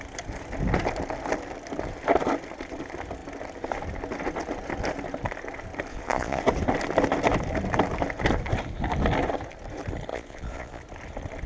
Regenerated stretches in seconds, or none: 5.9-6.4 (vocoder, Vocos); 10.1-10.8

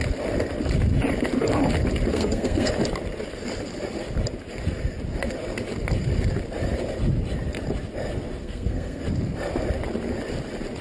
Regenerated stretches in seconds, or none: 2.1-2.7 (codec, SNAC); 8.4-9.0

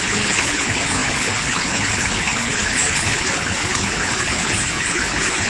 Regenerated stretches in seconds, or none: 0.0-5.5 (codec, HILCodec)

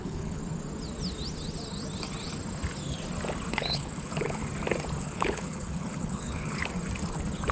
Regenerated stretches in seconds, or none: 0.0-0.4 (codec, HILCodec); 3.5-4.4; 5.0-6.6

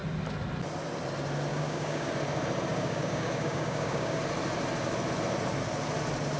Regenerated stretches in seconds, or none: 1.5-2.1 (codec, DAC); 2.7-4.2

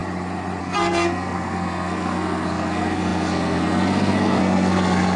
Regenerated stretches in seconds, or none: 0.6-5.2 (codec, SNAC)

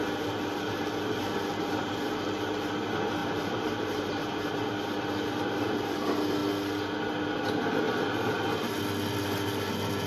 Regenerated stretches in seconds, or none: 3.2-4.6 (vocoder, BigVGAN v2)